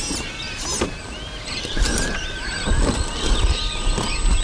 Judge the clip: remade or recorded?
recorded